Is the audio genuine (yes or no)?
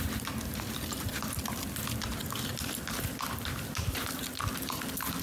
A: yes